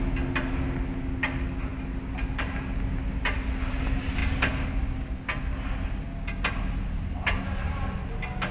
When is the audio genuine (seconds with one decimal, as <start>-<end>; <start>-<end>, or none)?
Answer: 0.0-8.5